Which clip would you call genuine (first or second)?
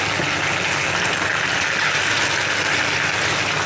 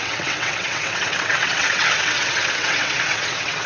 first